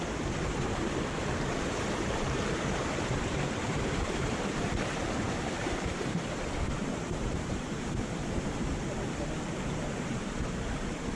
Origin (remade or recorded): remade